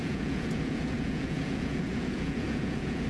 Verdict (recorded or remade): remade